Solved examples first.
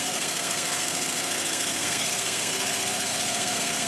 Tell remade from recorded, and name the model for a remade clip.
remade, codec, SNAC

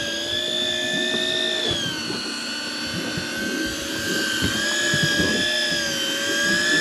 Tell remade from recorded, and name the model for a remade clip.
recorded